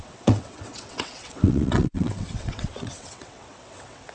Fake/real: fake